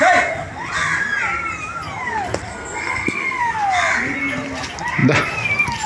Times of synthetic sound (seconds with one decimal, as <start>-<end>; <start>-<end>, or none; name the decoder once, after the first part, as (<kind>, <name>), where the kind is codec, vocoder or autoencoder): 2.5-3.4 (codec, SNAC)